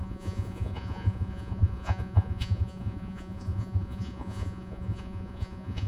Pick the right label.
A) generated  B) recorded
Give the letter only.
A